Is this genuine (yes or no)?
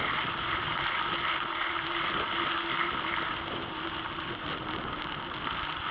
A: yes